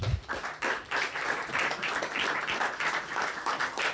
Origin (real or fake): real